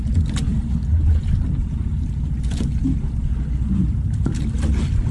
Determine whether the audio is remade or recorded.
recorded